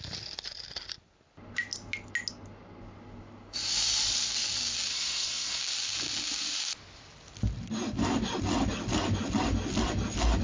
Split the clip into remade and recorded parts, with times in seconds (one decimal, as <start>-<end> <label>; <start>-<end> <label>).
0.0-4.9 recorded; 4.9-5.6 remade; 5.6-10.4 recorded